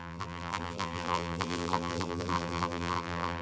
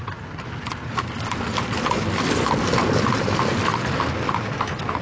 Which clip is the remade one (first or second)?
first